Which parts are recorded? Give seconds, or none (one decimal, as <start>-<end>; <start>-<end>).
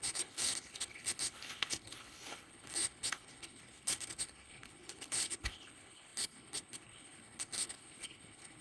none